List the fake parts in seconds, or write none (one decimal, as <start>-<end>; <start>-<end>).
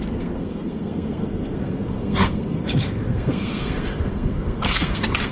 0.0-5.3